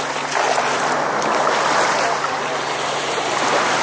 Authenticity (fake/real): real